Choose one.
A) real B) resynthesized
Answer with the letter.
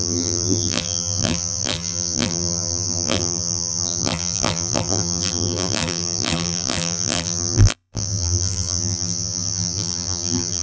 B